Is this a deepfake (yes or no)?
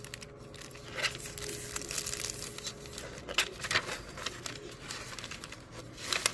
no